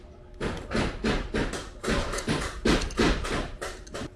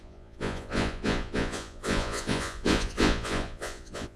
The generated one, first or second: second